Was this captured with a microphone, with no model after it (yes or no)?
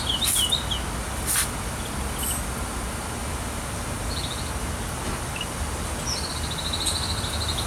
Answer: yes